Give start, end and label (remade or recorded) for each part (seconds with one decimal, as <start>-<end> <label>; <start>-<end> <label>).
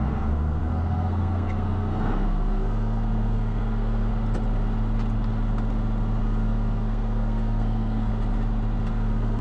0.0-4.1 remade; 4.1-6.2 recorded; 6.2-8.1 remade; 8.1-8.9 recorded; 8.9-9.4 remade